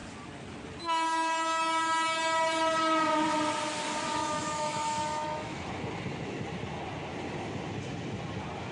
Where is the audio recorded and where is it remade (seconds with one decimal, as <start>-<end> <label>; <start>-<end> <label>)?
0.0-4.2 recorded; 4.2-5.7 remade; 5.7-8.7 recorded